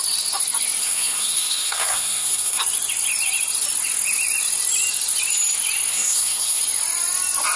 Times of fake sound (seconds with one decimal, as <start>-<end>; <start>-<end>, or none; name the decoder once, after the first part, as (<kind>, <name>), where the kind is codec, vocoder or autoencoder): 0.8-2.6 (codec, SNAC); 5.9-6.6